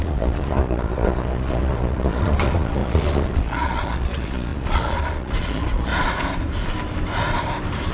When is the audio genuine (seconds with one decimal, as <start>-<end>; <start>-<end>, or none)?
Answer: 5.9-7.9